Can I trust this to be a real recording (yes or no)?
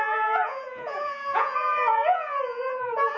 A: no